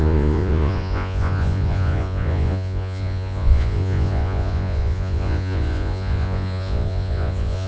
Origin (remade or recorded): remade